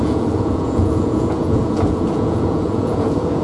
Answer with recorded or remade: remade